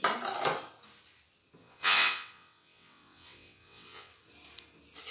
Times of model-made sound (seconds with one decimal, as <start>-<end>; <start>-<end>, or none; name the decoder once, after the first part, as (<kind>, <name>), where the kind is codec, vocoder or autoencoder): 1.6-4.1 (vocoder, WaveNeXt)